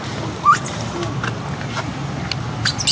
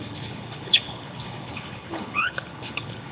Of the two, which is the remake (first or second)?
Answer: second